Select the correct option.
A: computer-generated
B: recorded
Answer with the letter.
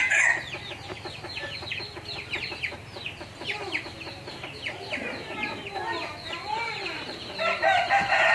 B